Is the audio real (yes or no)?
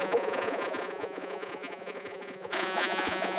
no